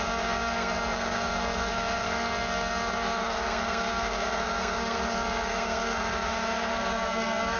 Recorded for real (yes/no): no